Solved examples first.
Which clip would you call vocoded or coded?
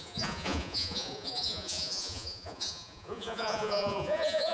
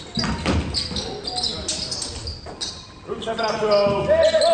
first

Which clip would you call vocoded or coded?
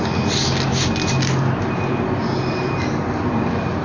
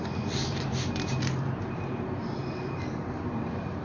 second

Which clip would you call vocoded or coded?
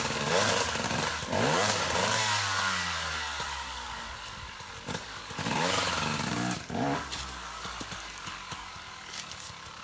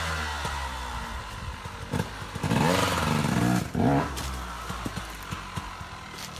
first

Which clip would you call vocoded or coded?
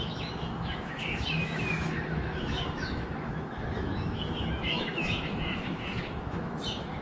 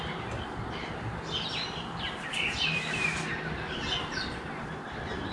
first